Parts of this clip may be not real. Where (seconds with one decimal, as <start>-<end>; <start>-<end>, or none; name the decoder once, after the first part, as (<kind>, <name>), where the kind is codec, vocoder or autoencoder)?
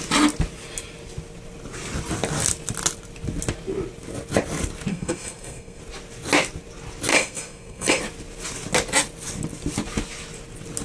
4.9-5.8 (codec, SNAC); 7.1-8.0